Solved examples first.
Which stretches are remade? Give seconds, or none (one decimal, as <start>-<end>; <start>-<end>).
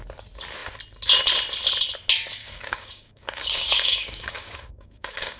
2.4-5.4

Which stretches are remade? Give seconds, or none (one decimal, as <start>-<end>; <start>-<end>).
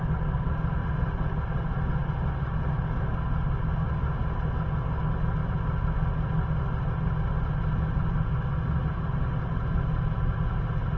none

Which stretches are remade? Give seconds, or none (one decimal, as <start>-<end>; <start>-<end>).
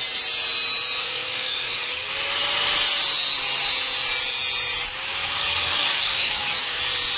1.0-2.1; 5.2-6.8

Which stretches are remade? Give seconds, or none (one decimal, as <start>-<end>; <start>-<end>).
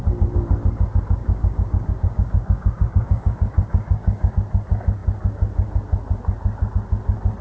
1.2-4.3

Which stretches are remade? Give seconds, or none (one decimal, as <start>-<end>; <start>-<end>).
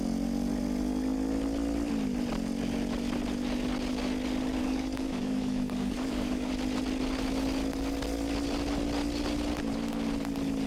4.6-6.5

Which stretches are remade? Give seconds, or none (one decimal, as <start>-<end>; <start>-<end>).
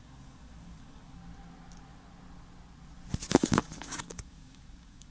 0.0-1.2; 3.3-5.1